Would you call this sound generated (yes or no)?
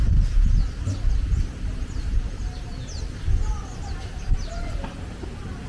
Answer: no